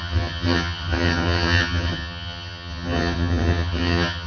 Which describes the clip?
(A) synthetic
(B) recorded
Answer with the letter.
A